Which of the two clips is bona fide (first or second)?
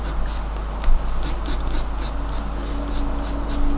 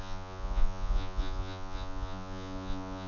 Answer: first